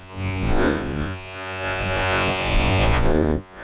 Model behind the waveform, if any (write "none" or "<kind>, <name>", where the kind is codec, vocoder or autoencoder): vocoder, Vocos